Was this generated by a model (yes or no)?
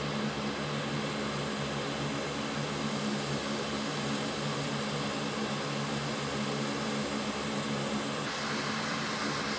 no